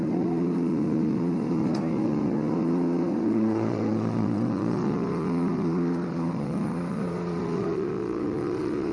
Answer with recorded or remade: remade